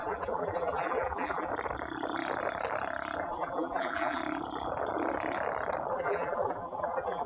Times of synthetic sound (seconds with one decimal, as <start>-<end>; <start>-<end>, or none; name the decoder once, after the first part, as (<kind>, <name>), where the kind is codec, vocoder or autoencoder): 0.0-1.5 (vocoder, BigVGAN v2); 3.2-4.2; 5.9-7.3